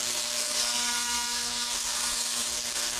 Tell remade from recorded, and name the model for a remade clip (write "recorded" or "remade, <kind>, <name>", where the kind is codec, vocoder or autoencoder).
remade, codec, SNAC